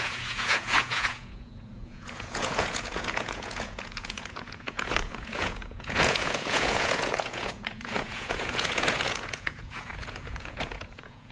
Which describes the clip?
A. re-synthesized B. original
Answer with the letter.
A